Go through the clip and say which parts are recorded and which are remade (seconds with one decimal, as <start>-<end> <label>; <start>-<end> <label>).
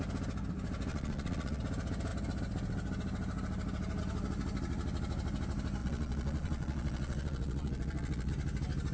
0.0-0.9 recorded; 0.9-1.6 remade; 1.6-5.8 recorded; 5.8-8.3 remade; 8.3-8.9 recorded